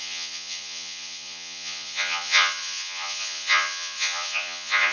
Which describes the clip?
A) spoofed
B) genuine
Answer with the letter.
A